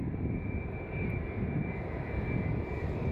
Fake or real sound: real